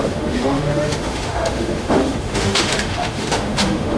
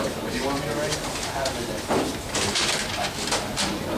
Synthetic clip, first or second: first